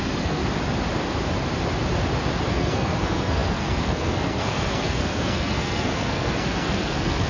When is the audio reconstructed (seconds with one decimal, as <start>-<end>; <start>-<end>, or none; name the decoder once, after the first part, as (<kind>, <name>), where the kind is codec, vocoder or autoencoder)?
0.0-0.4 (codec, SNAC); 2.5-7.3